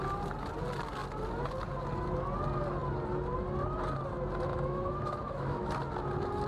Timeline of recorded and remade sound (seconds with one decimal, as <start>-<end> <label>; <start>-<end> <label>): 0.0-4.5 recorded; 4.5-5.7 remade; 5.7-6.5 recorded